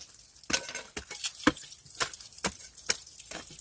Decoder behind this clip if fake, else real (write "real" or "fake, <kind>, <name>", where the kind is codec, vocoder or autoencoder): real